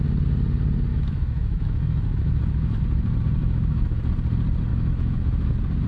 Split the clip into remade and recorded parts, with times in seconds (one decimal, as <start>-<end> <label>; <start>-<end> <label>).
0.0-0.9 recorded; 0.9-2.8 remade; 2.8-3.4 recorded; 3.4-4.0 remade; 4.0-4.7 recorded; 4.7-5.5 remade; 5.5-5.9 recorded